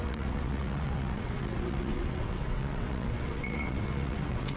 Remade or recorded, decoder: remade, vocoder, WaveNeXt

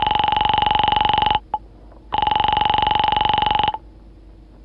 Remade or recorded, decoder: recorded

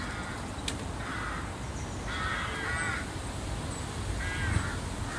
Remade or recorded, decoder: recorded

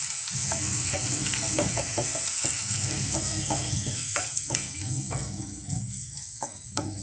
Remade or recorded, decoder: remade, codec, SNAC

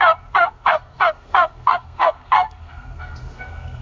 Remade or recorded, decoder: remade, codec, SNAC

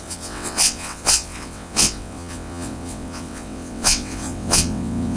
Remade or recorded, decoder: remade, vocoder, WaveNeXt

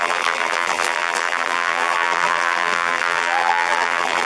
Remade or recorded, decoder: remade, vocoder, BigVGAN v2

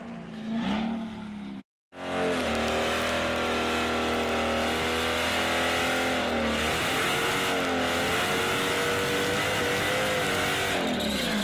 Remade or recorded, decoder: recorded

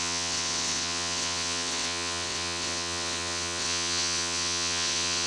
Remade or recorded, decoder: remade, vocoder, WaveNeXt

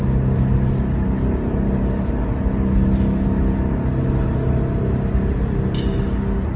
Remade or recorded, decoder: recorded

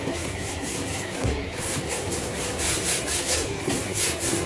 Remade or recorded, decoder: remade, codec, SNAC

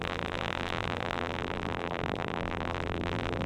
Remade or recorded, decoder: remade, vocoder, BigVGAN v2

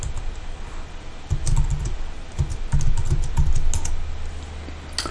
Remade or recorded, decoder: recorded